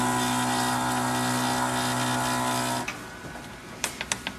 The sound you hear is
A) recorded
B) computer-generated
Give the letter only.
A